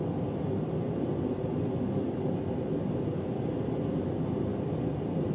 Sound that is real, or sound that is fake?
real